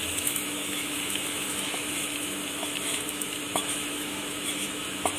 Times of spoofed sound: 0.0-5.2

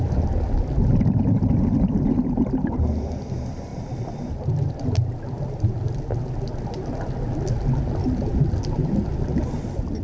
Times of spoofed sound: none

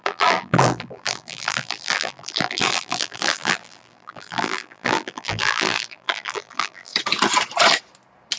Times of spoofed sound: 0.0-6.9

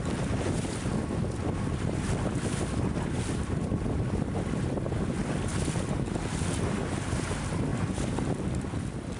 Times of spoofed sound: 0.0-9.2

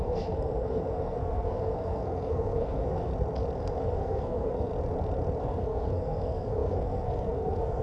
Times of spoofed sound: 0.0-3.1; 3.8-4.7; 5.4-7.8

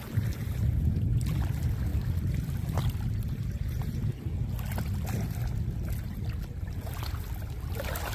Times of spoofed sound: none